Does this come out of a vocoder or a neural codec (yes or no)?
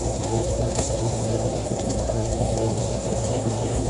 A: yes